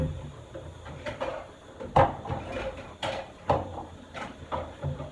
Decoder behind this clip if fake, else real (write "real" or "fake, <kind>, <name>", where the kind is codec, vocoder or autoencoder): fake, vocoder, BigVGAN v2